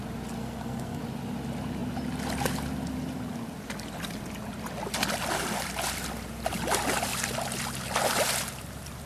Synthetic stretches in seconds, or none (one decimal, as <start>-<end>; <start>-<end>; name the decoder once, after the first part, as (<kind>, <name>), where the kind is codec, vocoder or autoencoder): 0.4-1.0 (codec, SNAC)